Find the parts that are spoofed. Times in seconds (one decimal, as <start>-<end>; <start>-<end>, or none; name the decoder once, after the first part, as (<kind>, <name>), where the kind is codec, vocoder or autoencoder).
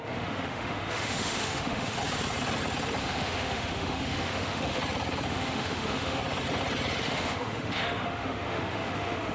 0.0-2.0 (autoencoder, DAC-VAE); 3.0-4.8; 5.3-6.2; 7.0-9.3